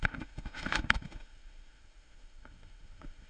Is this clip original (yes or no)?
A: no